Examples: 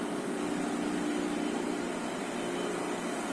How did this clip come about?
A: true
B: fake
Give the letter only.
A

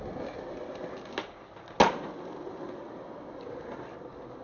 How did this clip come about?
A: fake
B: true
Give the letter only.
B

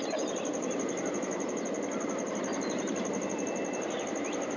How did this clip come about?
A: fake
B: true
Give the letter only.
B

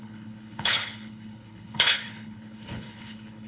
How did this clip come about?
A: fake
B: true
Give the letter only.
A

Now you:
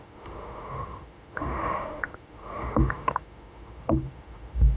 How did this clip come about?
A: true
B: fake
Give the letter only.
B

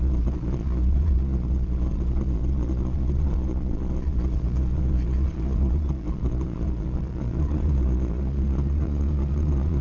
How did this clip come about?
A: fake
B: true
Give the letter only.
A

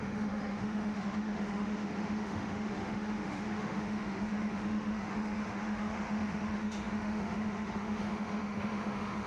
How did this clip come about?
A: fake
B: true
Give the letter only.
A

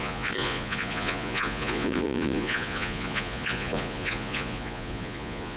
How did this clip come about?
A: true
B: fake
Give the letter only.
B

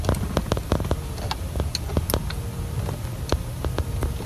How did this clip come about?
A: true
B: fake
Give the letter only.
A